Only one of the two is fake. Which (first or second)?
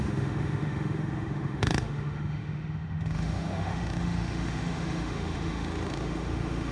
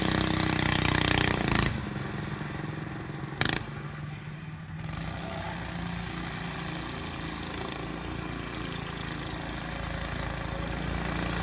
first